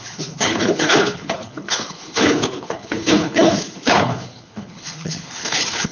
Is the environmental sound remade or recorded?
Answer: remade